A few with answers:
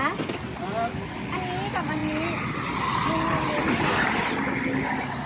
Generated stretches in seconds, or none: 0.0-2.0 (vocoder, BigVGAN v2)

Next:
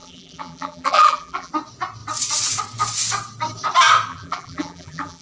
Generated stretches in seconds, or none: 0.0-1.5 (vocoder, BigVGAN v2); 4.1-5.2

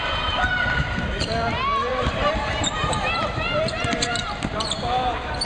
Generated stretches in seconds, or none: 1.9-5.5 (vocoder, BigVGAN v2)

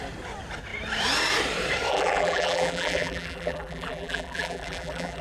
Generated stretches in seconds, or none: 1.9-5.2 (vocoder, BigVGAN v2)

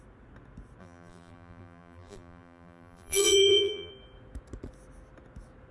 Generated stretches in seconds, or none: 0.8-3.9 (vocoder, BigVGAN v2)

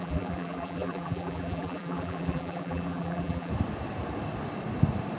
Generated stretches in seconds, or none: 0.0-3.5 (vocoder, BigVGAN v2)